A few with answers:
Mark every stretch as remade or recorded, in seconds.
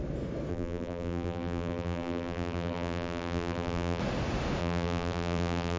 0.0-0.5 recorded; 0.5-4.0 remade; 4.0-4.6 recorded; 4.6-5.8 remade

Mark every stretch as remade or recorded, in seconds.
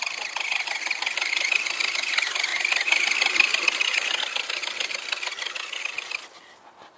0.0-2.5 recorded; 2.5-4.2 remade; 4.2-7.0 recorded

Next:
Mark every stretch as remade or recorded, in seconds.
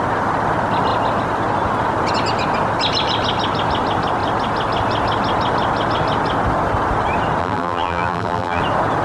0.0-7.4 recorded; 7.4-8.6 remade; 8.6-9.0 recorded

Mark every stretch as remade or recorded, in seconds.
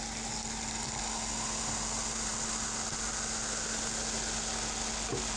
0.0-5.4 recorded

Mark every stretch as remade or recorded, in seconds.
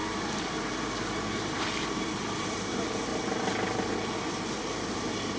0.0-1.3 recorded; 1.3-3.1 remade; 3.1-5.4 recorded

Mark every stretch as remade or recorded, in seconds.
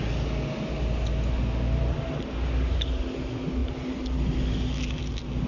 0.0-5.5 recorded